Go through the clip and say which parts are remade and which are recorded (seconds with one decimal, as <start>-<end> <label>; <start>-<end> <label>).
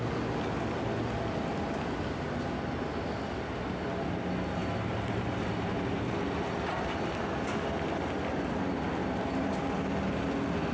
0.0-4.6 recorded; 4.6-6.2 remade; 6.2-9.0 recorded; 9.0-9.5 remade; 9.5-10.7 recorded